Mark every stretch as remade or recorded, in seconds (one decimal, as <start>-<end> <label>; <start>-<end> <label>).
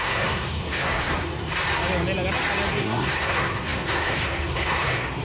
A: 0.0-1.3 remade; 1.3-2.7 recorded; 2.7-5.2 remade